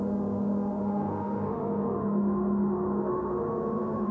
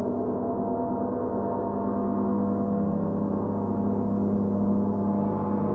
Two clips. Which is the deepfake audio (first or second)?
first